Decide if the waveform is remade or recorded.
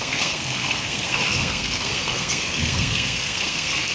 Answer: remade